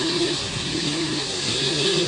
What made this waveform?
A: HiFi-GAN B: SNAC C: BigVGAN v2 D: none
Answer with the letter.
B